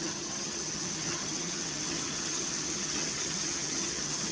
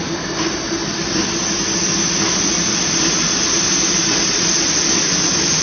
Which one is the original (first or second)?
second